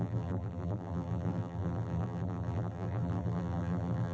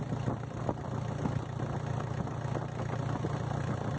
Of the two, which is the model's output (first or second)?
first